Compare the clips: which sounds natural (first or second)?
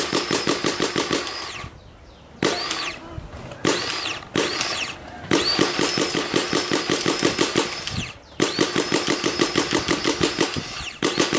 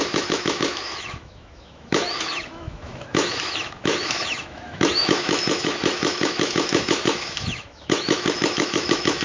first